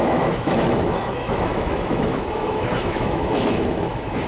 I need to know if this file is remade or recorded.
remade